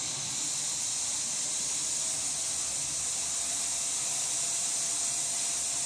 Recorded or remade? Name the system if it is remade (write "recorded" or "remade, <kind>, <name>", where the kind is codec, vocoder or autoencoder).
recorded